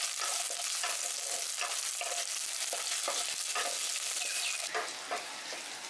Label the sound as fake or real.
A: real